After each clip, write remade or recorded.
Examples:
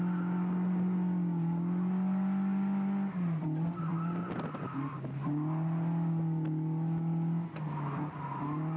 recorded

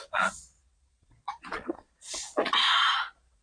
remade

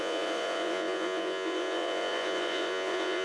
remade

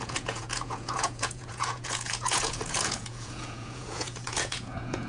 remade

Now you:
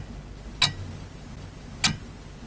recorded